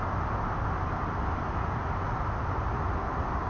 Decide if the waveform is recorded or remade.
recorded